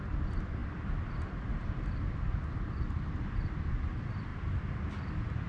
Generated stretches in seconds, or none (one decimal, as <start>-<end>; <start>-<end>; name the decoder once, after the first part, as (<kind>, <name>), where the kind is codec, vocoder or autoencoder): none